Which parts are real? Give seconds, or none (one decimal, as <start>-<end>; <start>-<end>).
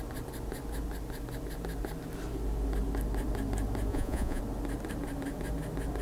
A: 0.0-3.9; 4.4-6.0